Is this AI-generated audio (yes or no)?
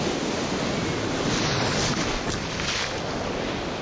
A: no